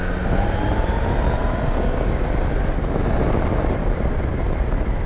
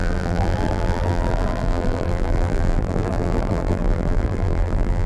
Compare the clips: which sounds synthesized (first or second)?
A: second